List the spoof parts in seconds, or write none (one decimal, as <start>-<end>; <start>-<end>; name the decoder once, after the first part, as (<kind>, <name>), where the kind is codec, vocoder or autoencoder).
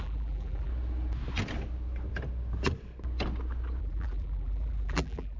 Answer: 0.0-0.7 (vocoder, BigVGAN v2); 3.8-5.4